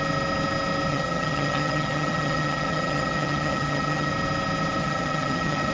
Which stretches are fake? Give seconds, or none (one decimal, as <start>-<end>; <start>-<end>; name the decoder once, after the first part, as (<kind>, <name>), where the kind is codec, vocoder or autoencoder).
0.9-4.1 (vocoder, HiFi-GAN); 4.8-5.7